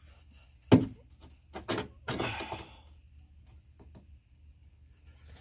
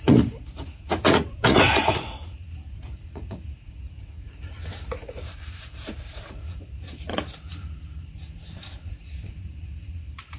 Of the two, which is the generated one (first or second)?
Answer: second